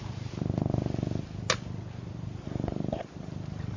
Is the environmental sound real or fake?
real